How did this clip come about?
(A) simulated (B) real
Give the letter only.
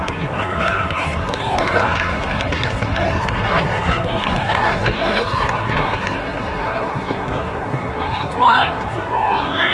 A